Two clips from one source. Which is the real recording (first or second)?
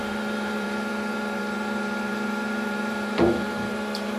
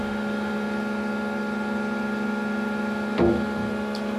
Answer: second